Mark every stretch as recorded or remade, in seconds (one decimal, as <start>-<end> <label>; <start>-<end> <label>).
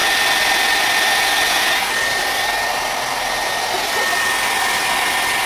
0.0-5.5 recorded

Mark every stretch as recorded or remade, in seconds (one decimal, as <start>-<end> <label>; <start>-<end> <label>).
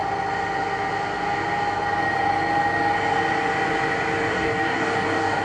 0.0-4.3 recorded; 4.3-5.4 remade